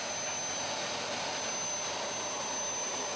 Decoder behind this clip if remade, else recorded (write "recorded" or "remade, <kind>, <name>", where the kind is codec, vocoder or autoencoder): recorded